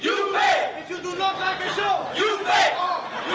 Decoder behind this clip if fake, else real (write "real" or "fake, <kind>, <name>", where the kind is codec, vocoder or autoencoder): real